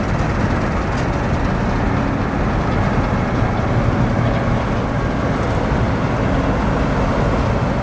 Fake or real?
real